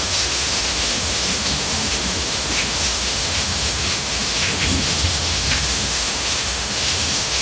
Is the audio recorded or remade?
remade